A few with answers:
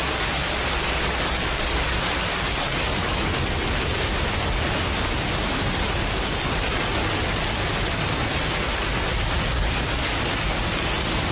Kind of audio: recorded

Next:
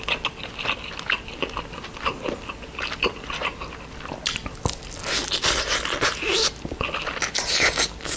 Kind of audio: recorded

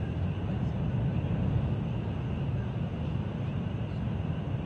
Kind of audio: recorded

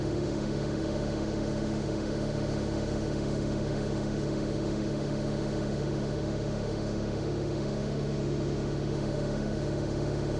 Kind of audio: remade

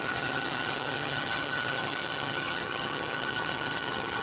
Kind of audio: remade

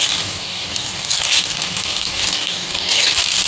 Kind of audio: remade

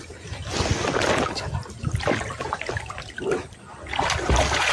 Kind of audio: recorded